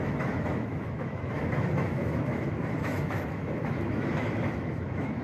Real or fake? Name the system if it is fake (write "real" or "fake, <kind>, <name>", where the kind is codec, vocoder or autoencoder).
fake, autoencoder, DAC-VAE